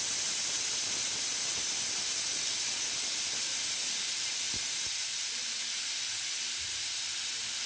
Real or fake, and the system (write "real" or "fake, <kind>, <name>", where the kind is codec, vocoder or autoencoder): real